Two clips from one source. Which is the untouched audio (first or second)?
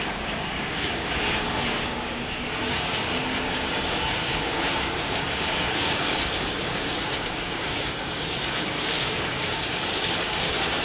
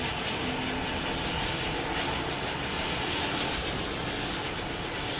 second